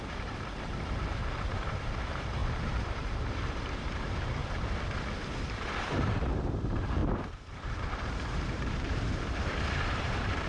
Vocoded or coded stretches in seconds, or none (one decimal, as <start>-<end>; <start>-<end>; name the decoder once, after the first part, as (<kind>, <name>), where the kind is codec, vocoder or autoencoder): 0.0-4.4 (vocoder, BigVGAN v2); 5.8-7.0; 7.6-10.5